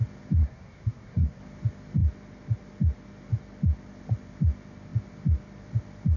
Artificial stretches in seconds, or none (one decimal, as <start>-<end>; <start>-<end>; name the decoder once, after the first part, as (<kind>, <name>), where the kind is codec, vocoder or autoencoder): 0.4-1.4 (codec, SNAC)